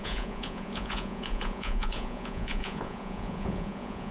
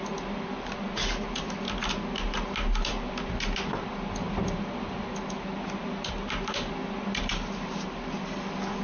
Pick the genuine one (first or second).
second